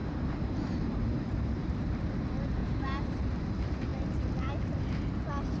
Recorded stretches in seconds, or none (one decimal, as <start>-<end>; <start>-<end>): 2.0-2.6; 3.4-3.9; 4.5-5.6